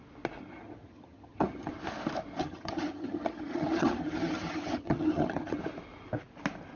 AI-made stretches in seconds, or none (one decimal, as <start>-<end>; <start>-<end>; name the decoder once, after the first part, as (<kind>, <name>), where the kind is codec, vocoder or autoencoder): 0.4-1.7 (vocoder, HiFi-GAN); 2.4-5.6